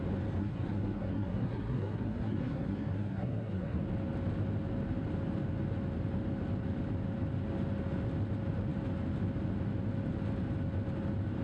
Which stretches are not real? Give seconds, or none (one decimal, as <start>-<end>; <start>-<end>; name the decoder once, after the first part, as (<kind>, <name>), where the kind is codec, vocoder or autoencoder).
0.4-3.8 (codec, SNAC)